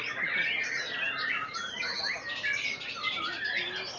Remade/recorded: recorded